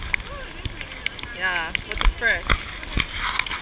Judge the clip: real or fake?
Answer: real